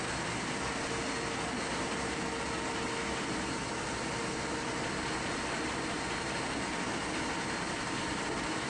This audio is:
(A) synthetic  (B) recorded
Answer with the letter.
B